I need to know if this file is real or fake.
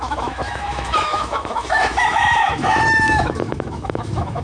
fake